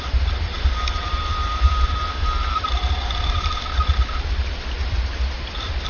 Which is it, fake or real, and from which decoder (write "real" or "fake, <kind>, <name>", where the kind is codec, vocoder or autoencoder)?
fake, vocoder, BigVGAN v2